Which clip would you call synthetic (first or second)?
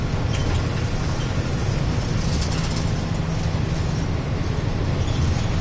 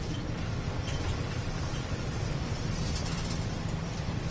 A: second